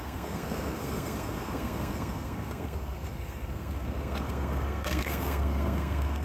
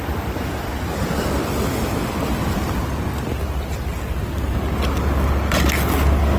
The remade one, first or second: first